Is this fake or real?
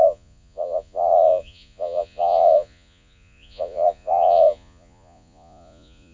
fake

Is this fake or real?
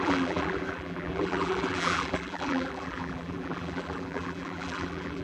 fake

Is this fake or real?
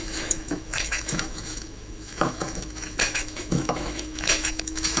fake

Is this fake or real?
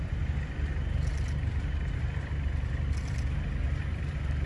real